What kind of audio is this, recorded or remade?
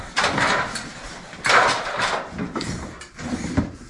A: recorded